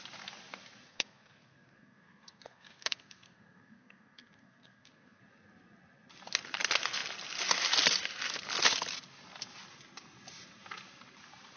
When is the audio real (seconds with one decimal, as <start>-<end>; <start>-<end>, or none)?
0.0-0.9; 5.2-11.6